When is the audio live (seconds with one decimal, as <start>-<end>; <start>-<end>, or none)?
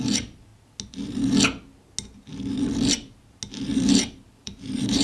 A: 0.5-3.5